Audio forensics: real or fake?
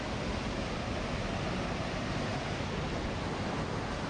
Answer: real